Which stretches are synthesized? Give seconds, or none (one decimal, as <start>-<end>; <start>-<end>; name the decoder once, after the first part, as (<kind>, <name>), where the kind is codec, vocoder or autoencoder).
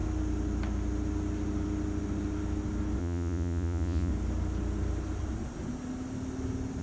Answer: 3.0-4.1 (vocoder, Vocos)